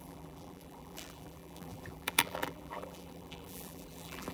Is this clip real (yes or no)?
no